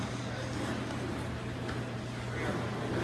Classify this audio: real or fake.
real